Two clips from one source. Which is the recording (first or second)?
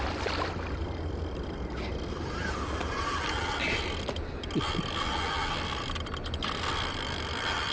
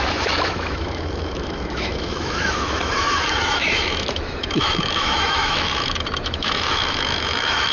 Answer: first